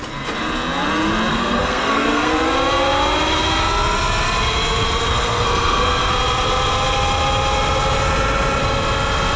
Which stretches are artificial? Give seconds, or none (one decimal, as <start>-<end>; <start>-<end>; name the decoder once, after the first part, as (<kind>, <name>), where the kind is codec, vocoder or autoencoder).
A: 1.3-2.3 (codec, SNAC); 5.1-6.1